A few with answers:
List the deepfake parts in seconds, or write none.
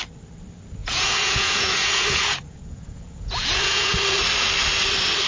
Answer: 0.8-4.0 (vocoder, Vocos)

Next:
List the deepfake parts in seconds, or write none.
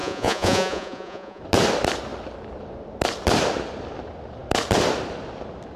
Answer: 0.0-1.4 (vocoder, Vocos)